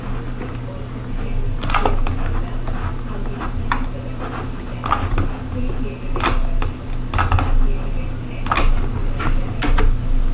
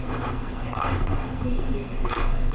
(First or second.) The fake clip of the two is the second